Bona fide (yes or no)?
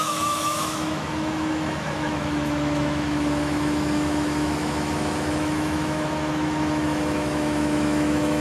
no